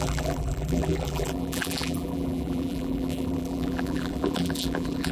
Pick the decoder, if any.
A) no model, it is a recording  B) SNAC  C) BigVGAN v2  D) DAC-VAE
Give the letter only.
C